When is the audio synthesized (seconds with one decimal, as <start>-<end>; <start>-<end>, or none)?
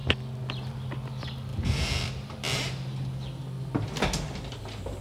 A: none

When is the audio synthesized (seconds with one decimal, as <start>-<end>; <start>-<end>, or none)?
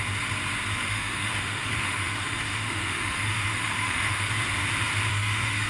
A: 0.9-4.3; 5.1-5.7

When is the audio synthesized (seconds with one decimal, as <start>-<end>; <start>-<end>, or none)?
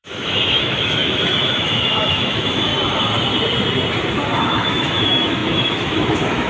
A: 0.0-2.7; 4.4-6.5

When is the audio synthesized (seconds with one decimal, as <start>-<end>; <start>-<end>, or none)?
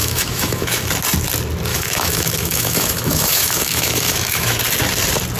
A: 0.0-0.9; 1.7-4.6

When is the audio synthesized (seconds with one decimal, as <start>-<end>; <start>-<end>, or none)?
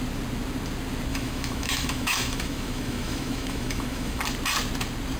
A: 1.1-4.2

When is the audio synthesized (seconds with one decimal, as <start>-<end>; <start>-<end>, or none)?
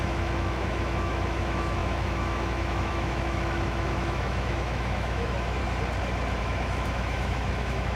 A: 0.0-5.6; 6.4-8.0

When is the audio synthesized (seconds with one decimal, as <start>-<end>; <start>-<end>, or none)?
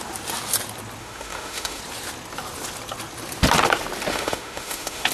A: 1.0-1.8; 4.1-5.1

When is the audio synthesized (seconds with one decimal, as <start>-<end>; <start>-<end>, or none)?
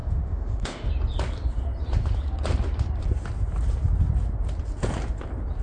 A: 0.0-0.9